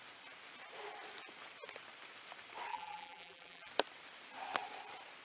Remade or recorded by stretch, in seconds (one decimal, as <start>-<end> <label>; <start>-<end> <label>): 0.0-2.7 recorded; 2.7-3.7 remade; 3.7-5.2 recorded